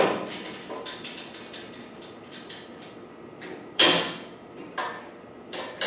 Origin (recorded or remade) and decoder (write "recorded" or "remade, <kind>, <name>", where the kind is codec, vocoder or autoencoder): remade, vocoder, BigVGAN v2